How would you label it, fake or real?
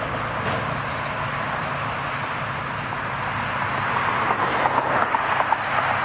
real